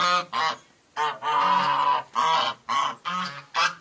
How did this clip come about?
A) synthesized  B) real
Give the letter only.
B